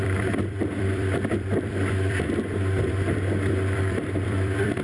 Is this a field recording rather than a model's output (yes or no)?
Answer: no